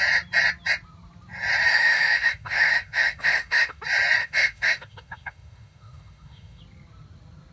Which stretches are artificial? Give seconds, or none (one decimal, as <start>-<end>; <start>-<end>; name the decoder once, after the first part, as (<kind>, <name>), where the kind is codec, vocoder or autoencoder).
1.7-3.8 (autoencoder, DAC-VAE); 4.2-6.6